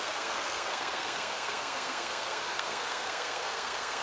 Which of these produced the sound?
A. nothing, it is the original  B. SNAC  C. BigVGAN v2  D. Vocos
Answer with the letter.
B